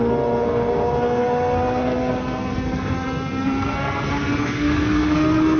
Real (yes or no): no